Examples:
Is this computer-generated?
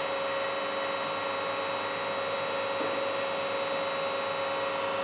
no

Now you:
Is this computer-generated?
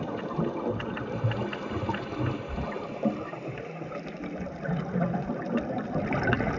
no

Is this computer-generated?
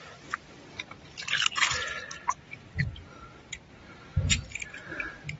no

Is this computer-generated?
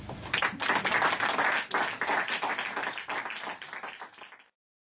no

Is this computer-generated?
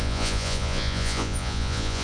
yes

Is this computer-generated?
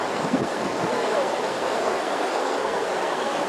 yes